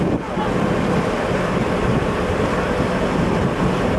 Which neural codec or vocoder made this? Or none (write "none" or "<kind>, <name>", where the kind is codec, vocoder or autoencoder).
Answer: none